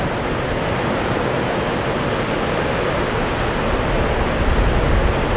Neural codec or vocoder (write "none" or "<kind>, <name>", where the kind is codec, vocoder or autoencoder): none